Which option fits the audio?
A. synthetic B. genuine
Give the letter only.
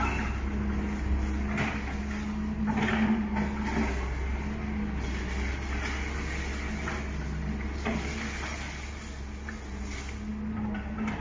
B